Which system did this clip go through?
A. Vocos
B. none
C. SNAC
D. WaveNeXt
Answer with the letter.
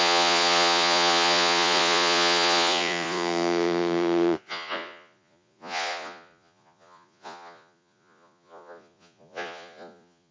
A